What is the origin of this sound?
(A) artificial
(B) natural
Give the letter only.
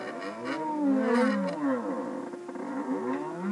B